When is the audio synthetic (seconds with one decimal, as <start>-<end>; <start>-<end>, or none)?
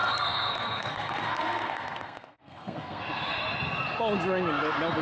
0.0-3.0